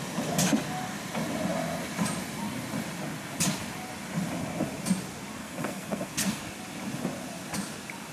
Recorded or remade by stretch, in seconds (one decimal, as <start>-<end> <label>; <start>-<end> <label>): 0.0-5.4 recorded; 5.4-6.5 remade; 6.5-8.1 recorded